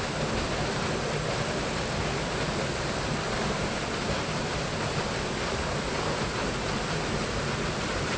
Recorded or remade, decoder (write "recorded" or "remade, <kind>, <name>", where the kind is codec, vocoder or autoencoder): recorded